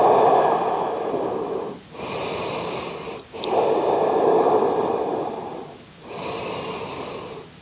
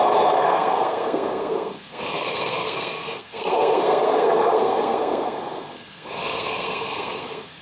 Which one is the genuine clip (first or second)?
first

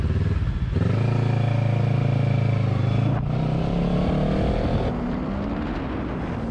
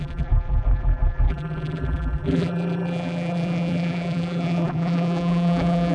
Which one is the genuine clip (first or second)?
first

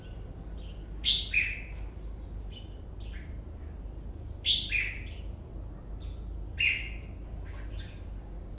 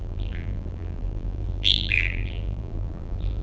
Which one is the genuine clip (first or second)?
first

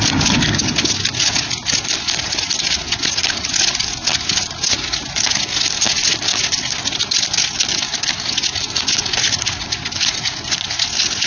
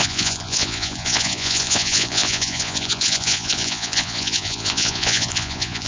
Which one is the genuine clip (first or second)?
first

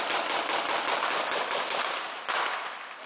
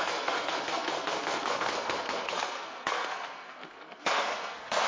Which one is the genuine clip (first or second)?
first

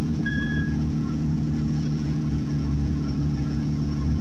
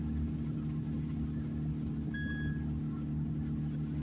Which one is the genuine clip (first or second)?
second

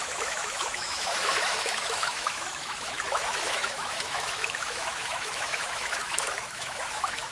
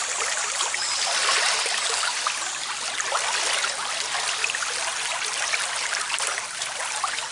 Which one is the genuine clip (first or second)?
second